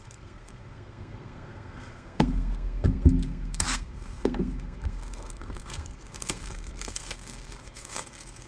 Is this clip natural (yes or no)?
no